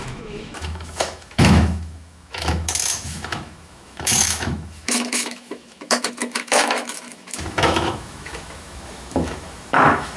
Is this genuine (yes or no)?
no